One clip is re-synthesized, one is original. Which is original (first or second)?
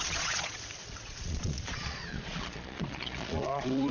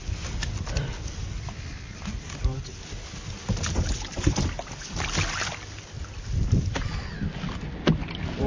second